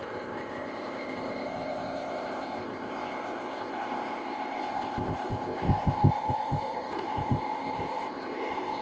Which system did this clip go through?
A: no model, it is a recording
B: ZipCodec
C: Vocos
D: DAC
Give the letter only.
B